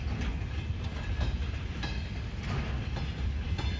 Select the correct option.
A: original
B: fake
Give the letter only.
A